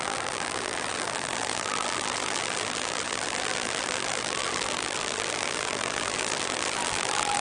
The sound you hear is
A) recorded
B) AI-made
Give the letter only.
B